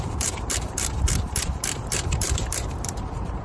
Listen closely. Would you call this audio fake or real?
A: fake